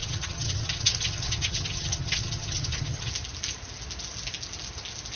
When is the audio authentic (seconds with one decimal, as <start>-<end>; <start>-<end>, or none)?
3.1-5.2